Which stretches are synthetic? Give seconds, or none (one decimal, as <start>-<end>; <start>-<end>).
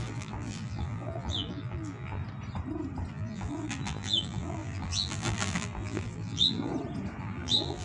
0.0-2.2; 3.1-6.7; 7.2-7.8